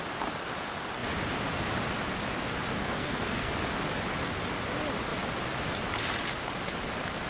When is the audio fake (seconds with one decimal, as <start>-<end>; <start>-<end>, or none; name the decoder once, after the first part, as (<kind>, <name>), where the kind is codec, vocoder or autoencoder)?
2.8-3.5 (codec, SNAC)

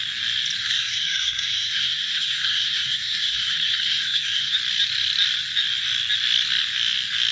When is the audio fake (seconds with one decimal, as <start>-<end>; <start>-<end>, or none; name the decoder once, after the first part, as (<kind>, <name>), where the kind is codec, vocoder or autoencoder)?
0.6-4.5 (codec, SNAC)

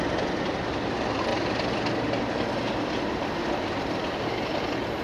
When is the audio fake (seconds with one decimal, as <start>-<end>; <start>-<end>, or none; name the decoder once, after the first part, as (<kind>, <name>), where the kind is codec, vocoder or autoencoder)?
none

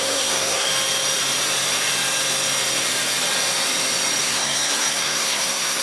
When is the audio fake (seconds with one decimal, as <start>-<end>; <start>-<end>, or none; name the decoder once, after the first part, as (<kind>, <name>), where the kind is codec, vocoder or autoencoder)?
0.0-0.7 (codec, SNAC); 4.2-5.8

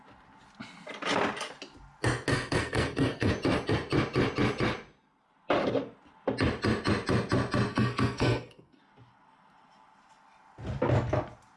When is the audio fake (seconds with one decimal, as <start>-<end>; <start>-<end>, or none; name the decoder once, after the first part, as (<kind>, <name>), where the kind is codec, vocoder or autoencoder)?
2.3-3.3 (codec, SNAC); 7.7-8.8